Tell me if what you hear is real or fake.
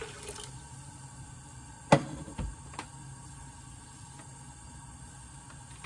real